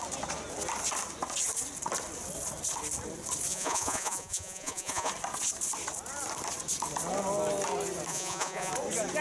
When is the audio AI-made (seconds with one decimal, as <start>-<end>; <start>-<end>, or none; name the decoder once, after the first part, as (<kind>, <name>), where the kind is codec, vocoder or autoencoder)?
3.5-5.1 (vocoder, Vocos); 8.1-8.7